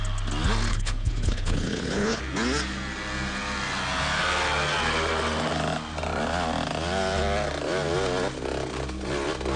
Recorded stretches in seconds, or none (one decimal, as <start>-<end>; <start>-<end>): 0.0-0.7; 2.2-9.6